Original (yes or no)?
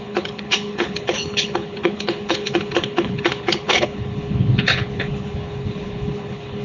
no